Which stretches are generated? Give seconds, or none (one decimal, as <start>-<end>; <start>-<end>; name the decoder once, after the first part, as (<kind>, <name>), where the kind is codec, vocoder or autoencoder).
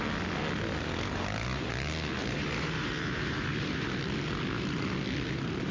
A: 2.2-4.0 (vocoder, BigVGAN v2)